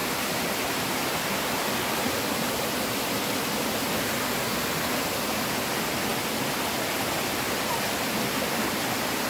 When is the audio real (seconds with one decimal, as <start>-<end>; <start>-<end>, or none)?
2.2-9.3